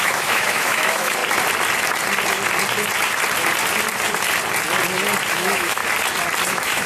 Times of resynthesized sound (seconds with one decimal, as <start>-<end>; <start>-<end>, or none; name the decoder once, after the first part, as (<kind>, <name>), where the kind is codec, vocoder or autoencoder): 0.0-1.2 (autoencoder, DAC-VAE); 5.3-5.8; 6.5-6.9